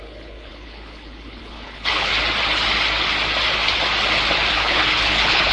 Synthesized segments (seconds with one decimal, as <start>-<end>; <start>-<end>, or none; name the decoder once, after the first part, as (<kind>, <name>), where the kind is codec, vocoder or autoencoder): 0.0-2.1 (codec, HILCodec); 4.5-5.5

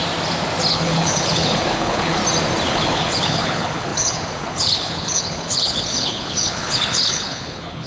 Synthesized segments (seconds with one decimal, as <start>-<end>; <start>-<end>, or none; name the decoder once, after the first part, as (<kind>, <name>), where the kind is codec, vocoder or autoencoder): 0.7-2.2 (codec, HILCodec); 2.7-7.9

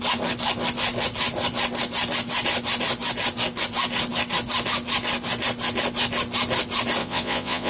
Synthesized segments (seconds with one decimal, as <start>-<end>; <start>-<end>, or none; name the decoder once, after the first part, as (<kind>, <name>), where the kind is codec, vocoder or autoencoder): 7.0-7.7 (vocoder, Vocos)

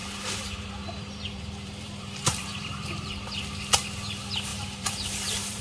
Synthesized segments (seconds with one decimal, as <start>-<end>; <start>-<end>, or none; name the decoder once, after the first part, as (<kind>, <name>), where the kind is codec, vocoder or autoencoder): 0.0-3.1 (vocoder, BigVGAN v2); 4.5-5.6

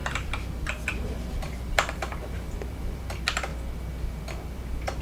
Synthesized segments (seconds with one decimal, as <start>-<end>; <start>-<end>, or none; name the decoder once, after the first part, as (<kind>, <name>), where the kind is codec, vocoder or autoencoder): 0.0-3.0 (vocoder, BigVGAN v2)

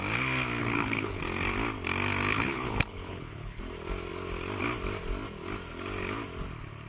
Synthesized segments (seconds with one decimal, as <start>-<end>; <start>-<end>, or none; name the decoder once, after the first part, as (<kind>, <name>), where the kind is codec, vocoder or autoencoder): 0.6-1.2 (codec, HILCodec); 2.3-3.6

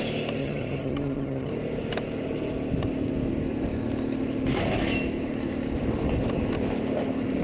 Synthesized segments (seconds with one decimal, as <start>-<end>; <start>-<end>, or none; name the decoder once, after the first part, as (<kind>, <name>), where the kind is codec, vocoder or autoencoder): 0.4-1.5 (vocoder, HiFi-GAN)